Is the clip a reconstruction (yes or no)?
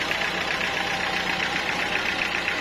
no